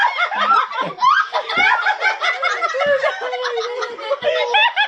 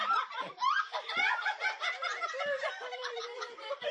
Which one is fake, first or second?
second